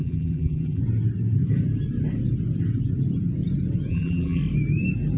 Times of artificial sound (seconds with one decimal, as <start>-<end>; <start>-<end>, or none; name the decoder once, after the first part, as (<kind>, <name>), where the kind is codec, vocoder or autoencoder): 0.0-0.8 (vocoder, BigVGAN v2); 3.9-4.4